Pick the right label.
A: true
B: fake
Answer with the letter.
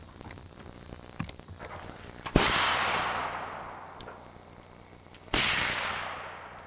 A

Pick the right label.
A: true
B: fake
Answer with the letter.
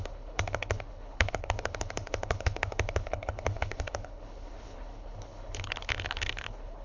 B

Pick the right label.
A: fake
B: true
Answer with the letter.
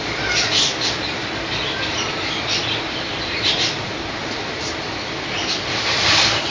A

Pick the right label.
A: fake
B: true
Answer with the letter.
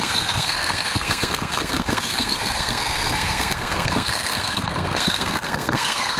A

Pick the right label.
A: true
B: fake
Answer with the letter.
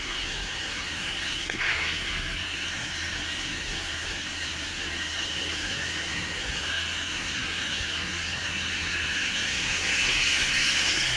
B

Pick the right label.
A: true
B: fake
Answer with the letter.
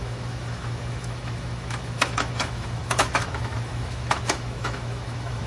B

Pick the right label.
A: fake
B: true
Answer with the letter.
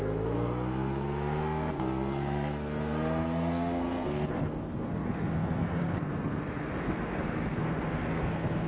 A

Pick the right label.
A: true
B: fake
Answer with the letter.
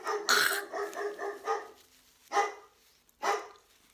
A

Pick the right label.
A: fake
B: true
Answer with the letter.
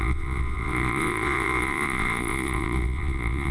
A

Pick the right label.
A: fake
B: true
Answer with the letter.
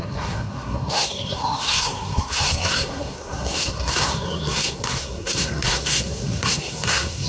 A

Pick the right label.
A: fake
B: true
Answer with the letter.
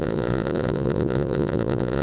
A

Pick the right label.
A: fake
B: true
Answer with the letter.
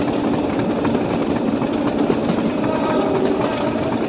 B